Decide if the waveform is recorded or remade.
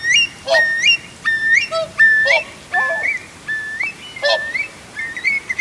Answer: recorded